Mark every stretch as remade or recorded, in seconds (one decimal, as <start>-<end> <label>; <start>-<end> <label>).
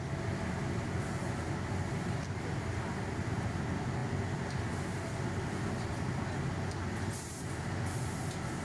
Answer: 0.0-8.6 recorded